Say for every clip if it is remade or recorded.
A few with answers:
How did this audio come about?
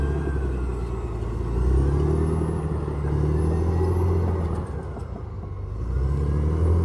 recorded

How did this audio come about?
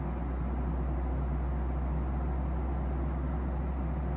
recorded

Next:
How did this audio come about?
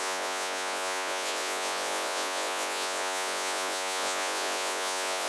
remade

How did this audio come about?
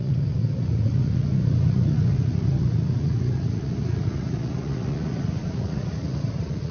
remade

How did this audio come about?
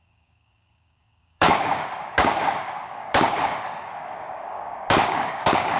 remade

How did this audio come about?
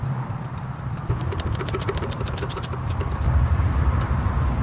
remade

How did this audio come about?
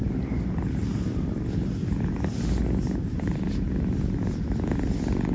recorded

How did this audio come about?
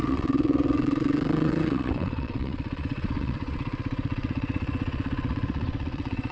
remade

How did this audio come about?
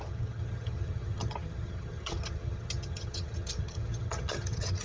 remade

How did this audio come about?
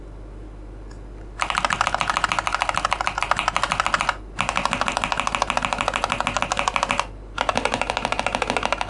recorded